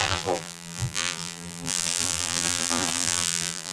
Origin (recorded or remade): remade